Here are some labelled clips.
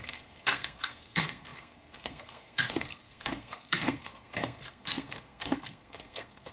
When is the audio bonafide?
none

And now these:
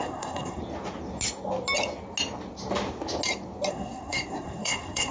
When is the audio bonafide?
0.6-3.7

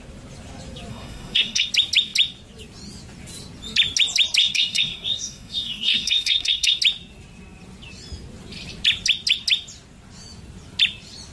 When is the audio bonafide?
0.0-0.9; 1.7-4.4; 6.8-11.3

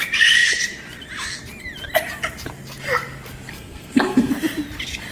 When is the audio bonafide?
0.0-3.5; 4.3-5.1

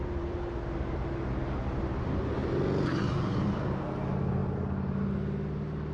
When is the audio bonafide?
0.0-5.9